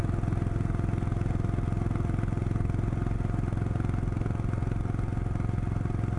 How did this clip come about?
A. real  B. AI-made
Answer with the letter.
A